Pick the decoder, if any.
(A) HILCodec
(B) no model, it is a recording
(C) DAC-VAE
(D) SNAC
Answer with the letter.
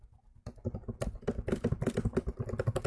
B